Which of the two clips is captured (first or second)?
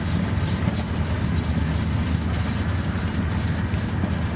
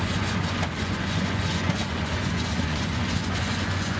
first